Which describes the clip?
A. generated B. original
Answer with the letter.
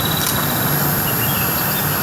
B